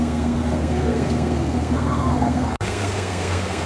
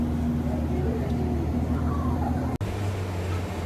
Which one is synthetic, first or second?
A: first